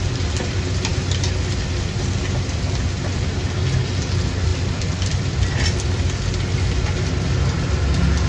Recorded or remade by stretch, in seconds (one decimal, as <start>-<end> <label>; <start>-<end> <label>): 0.0-4.5 recorded; 4.5-5.8 remade; 5.8-8.3 recorded